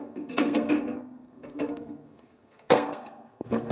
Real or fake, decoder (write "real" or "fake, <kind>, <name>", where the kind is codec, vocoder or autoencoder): fake, codec, SNAC